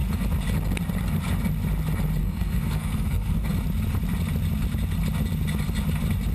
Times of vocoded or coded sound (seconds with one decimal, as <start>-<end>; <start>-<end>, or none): 2.2-3.5